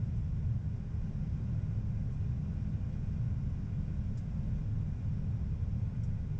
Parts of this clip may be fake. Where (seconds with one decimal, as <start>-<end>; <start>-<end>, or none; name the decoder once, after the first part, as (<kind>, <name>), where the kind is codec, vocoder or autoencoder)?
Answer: none